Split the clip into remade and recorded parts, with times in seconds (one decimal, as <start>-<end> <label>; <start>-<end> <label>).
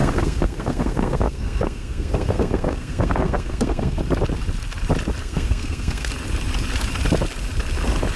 0.0-4.0 remade; 4.0-5.2 recorded; 5.2-6.1 remade; 6.1-8.2 recorded